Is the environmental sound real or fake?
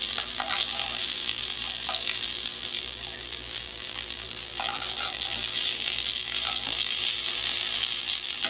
fake